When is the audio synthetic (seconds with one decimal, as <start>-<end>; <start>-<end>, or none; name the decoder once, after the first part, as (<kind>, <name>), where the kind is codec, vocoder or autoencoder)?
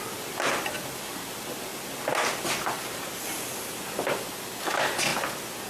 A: none